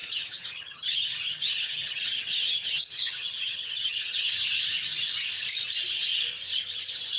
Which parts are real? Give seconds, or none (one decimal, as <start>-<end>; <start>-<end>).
4.3-7.2